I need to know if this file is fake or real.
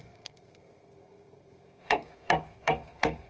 fake